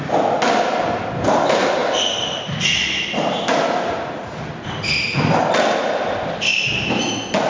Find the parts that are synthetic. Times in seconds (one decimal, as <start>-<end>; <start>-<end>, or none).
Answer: none